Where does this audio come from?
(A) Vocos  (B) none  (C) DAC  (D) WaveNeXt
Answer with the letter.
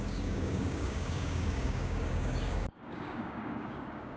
C